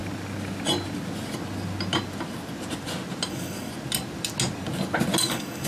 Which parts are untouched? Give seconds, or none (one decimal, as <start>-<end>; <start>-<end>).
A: 0.0-3.3; 3.7-5.2

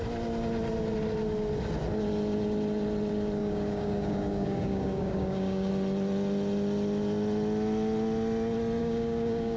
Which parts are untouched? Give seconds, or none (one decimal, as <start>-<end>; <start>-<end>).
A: 0.0-3.4; 5.7-8.8